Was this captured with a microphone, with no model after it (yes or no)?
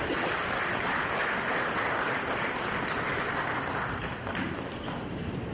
no